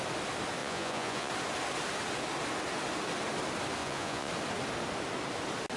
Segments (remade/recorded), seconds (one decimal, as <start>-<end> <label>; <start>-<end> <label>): 0.0-0.6 recorded; 0.6-1.3 remade; 1.3-3.8 recorded; 3.8-4.3 remade; 4.3-5.8 recorded